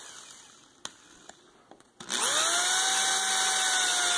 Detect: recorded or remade recorded